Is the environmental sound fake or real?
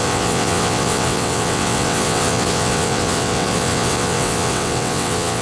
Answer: fake